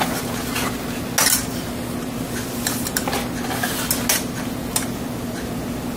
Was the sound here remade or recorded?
recorded